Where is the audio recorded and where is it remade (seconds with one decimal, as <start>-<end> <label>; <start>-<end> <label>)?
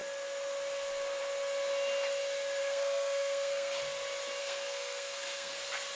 0.0-2.6 recorded; 2.6-3.8 remade; 3.8-4.4 recorded; 4.4-5.5 remade; 5.5-5.9 recorded